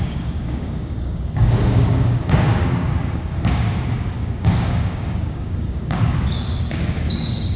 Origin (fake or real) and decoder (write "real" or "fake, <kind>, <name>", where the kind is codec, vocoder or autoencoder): fake, codec, DAC